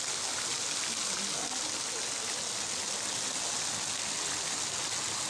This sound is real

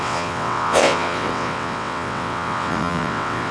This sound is fake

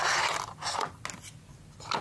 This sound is real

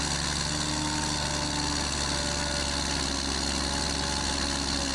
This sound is real